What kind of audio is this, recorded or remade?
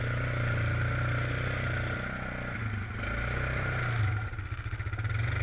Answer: recorded